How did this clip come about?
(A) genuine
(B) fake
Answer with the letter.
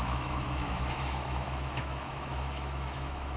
B